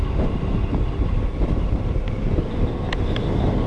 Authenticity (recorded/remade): recorded